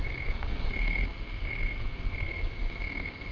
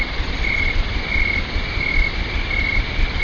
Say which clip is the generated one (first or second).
first